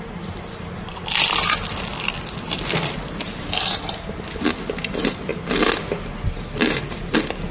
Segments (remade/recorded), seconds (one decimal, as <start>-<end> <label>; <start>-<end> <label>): 0.0-7.5 recorded